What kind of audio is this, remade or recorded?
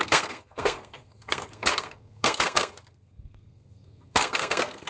remade